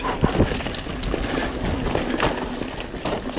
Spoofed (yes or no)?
no